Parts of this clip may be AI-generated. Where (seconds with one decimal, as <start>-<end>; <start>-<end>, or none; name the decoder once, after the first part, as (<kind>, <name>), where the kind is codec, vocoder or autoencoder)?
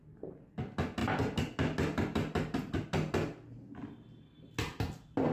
none